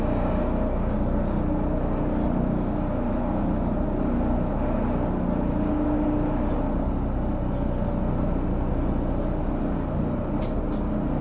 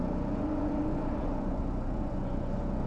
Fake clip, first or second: second